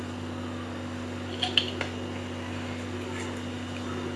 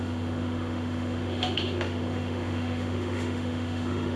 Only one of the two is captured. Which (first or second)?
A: first